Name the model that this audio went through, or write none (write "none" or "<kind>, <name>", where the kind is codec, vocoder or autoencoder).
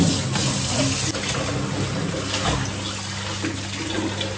none